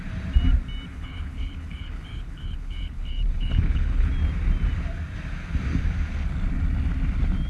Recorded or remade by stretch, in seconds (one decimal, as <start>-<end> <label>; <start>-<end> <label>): 0.0-0.9 recorded; 0.9-4.1 remade; 4.1-7.5 recorded